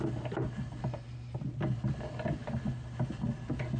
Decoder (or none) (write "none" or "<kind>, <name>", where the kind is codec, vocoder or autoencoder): none